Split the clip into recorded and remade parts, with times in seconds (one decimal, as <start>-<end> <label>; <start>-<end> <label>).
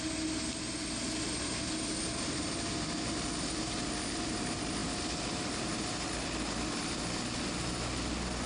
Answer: 0.0-8.5 recorded